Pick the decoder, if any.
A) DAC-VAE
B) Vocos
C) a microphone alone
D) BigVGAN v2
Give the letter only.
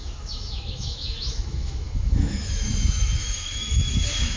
A